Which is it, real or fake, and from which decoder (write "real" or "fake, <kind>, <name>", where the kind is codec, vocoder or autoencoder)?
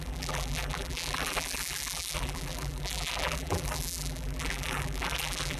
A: fake, vocoder, BigVGAN v2